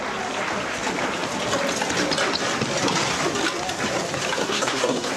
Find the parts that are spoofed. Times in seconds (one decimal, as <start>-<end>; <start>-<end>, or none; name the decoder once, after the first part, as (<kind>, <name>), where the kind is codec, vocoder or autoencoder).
4.4-5.2 (codec, SNAC)